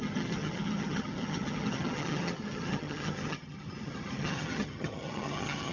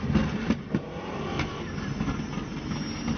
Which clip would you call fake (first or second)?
first